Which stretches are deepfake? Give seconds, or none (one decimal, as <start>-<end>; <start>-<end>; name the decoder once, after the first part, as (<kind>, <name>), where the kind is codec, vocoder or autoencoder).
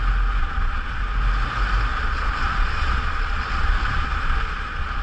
0.4-1.0 (vocoder, Vocos); 1.9-5.0